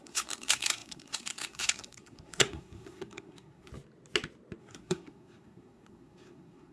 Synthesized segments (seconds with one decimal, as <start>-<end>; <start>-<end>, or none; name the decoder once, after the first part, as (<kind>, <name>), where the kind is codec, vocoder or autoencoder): 0.0-3.7 (codec, SNAC); 4.6-6.7